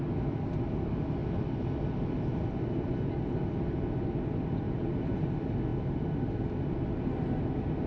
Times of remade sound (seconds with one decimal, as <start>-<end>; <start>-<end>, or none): none